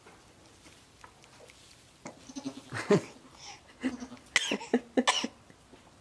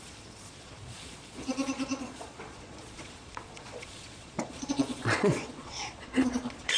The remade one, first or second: second